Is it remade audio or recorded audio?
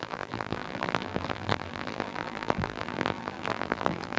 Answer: remade